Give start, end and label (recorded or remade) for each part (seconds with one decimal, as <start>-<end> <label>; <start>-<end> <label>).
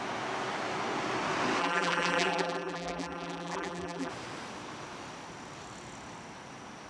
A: 0.0-1.6 recorded; 1.6-4.1 remade; 4.1-6.9 recorded